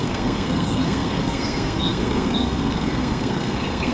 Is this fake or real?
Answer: fake